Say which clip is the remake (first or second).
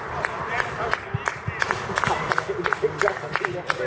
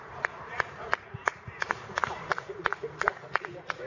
second